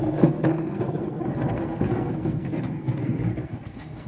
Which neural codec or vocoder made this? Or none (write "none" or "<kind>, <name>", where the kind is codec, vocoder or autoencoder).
codec, SNAC